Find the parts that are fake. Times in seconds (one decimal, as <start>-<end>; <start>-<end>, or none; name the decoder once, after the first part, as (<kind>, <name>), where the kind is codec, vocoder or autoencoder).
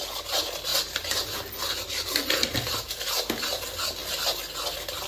none